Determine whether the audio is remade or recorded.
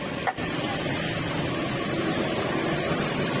recorded